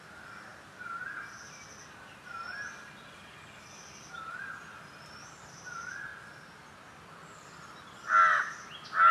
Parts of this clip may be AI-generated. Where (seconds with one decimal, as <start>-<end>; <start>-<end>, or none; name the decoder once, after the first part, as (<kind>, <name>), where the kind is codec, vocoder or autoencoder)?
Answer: none